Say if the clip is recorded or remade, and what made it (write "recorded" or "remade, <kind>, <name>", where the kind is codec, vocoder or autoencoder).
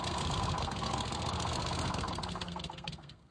remade, codec, SNAC